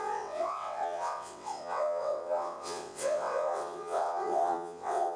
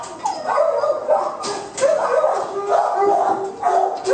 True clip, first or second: second